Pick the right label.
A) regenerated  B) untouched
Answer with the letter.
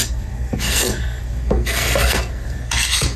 A